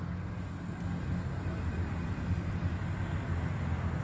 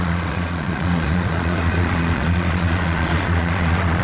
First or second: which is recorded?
first